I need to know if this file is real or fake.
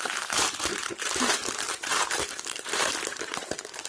fake